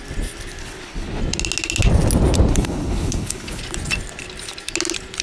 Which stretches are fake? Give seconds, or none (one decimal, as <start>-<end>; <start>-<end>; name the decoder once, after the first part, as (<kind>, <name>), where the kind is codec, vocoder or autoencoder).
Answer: 0.6-1.2 (codec, HILCodec); 2.5-3.6